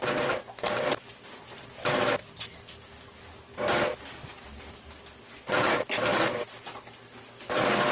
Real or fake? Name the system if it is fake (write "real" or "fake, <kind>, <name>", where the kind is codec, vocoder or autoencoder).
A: real